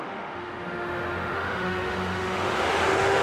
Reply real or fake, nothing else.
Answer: fake